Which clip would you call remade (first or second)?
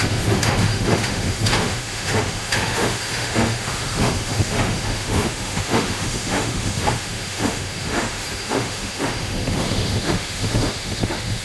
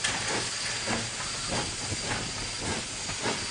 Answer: first